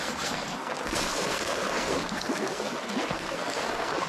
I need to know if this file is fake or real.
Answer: fake